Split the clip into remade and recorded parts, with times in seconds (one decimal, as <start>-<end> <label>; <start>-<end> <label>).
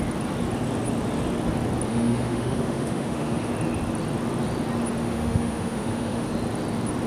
0.0-1.9 recorded; 1.9-3.5 remade; 3.5-5.0 recorded; 5.0-6.3 remade; 6.3-7.1 recorded